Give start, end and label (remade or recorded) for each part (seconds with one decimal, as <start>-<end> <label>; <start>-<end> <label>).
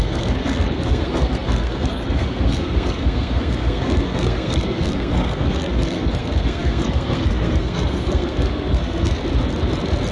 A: 0.0-9.2 remade; 9.2-10.1 recorded